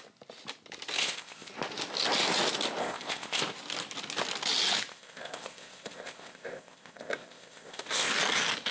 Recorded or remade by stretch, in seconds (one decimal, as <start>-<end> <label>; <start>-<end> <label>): 0.0-1.0 recorded; 1.0-1.5 remade; 1.5-2.8 recorded; 2.8-3.4 remade; 3.4-4.9 recorded; 4.9-8.1 remade; 8.1-8.7 recorded